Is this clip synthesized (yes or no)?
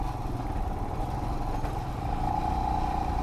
no